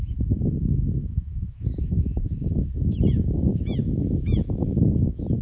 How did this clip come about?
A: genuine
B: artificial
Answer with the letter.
B